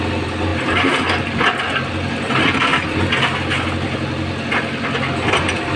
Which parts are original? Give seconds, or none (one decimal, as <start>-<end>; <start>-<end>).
0.0-5.8